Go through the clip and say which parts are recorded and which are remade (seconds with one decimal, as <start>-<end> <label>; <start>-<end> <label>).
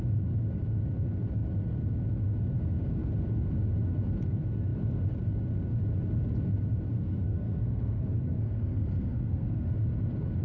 0.0-6.9 recorded; 6.9-9.7 remade; 9.7-10.4 recorded